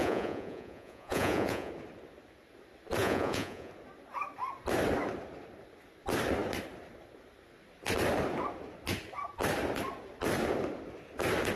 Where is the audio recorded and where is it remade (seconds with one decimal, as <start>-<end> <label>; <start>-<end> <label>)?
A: 0.0-1.7 remade; 1.7-3.0 recorded; 3.0-3.7 remade; 3.7-11.6 recorded